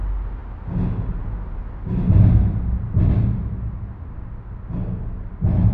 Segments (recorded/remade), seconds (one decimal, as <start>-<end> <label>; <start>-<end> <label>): 0.0-5.7 recorded

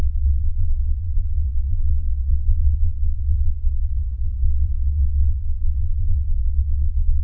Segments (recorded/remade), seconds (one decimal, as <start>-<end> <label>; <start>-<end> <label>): 0.0-7.2 remade

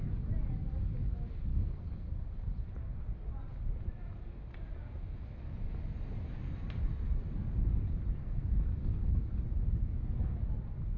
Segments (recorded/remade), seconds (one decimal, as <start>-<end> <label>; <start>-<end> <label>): 0.0-1.5 recorded; 1.5-2.3 remade; 2.3-8.2 recorded; 8.2-9.2 remade; 9.2-11.0 recorded

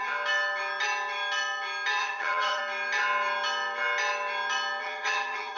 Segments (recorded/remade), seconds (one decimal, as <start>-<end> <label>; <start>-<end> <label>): 0.0-2.0 recorded; 2.0-2.6 remade; 2.6-4.8 recorded; 4.8-5.6 remade

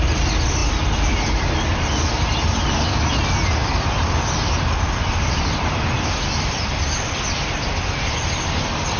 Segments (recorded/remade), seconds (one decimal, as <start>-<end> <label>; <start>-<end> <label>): 0.0-9.0 recorded